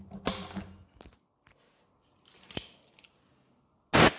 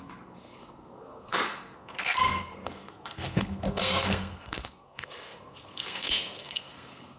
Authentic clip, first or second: first